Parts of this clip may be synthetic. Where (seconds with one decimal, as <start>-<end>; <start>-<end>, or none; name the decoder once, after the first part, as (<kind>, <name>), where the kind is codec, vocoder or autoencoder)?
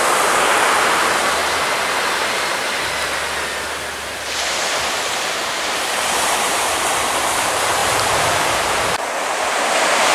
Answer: 0.0-1.4 (vocoder, BigVGAN v2); 4.2-10.1